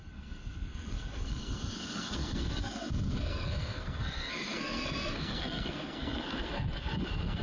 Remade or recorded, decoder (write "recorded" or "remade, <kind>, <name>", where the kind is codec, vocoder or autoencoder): remade, codec, SNAC